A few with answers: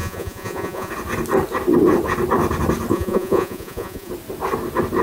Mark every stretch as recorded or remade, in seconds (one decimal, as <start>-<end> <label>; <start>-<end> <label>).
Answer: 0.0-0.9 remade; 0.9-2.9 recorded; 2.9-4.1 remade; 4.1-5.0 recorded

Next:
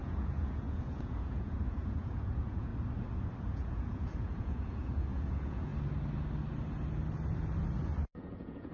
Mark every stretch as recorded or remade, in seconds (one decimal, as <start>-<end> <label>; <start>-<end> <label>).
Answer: 0.0-2.7 remade; 2.7-3.4 recorded; 3.4-5.7 remade; 5.7-8.2 recorded; 8.2-8.7 remade

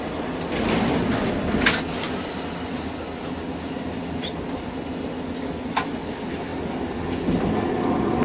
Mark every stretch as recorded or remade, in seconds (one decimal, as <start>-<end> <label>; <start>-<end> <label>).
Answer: 0.0-8.2 recorded

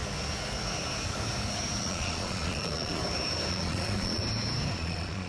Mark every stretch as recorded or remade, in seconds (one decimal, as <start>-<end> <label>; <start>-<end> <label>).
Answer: 0.0-1.8 recorded; 1.8-3.0 remade; 3.0-3.5 recorded; 3.5-4.2 remade; 4.2-4.7 recorded; 4.7-5.3 remade

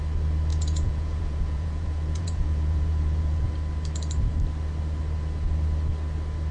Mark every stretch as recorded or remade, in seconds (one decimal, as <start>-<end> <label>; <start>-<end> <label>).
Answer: 0.0-0.5 recorded; 0.5-3.5 remade; 3.5-6.5 recorded

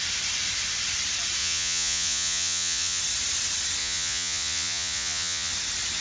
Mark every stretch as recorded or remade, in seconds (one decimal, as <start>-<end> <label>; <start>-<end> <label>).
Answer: 0.0-1.4 recorded; 1.4-3.0 remade; 3.0-3.8 recorded; 3.8-5.5 remade; 5.5-6.0 recorded